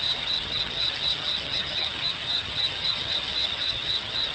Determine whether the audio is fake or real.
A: fake